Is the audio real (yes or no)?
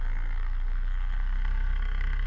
no